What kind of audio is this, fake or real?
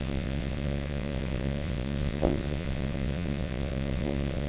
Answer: fake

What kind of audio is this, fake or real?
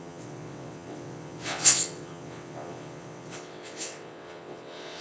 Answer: fake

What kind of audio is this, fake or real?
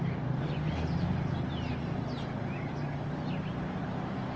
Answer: real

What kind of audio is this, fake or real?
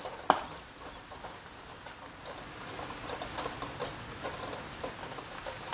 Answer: real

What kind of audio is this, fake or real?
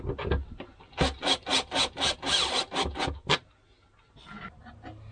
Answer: real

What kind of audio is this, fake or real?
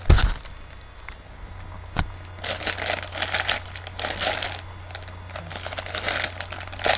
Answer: real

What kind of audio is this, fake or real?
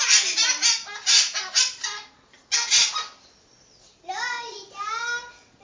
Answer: real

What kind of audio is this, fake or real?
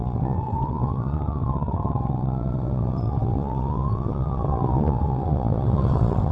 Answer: fake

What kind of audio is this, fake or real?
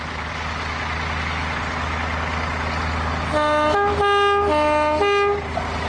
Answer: real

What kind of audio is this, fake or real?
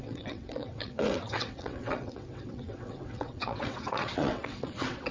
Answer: fake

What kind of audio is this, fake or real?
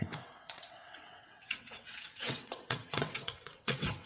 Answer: fake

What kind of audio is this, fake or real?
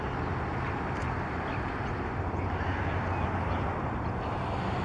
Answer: real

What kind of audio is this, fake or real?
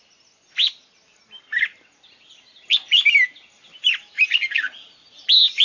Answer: real